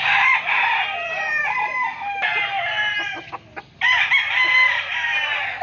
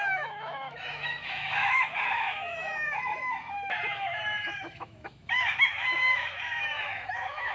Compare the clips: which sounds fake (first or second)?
second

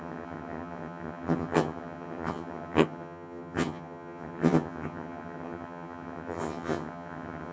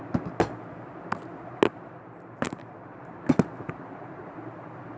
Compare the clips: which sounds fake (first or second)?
first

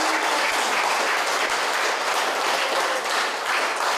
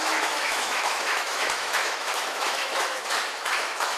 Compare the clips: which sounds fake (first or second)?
second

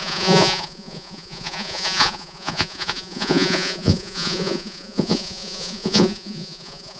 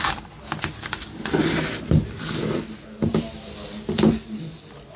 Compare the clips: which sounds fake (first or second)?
first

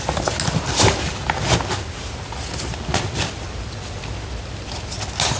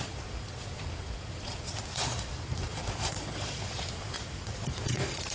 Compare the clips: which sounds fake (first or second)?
second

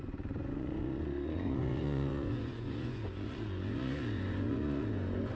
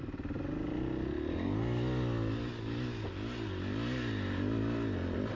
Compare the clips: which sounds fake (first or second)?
first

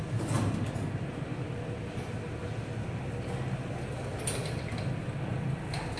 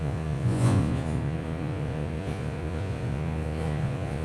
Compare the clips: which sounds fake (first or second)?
second